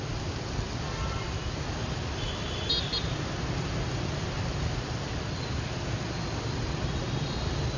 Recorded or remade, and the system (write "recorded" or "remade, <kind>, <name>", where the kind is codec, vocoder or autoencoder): recorded